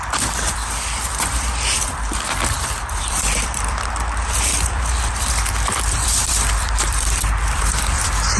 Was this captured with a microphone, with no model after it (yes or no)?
no